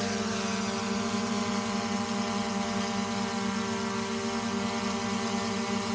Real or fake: real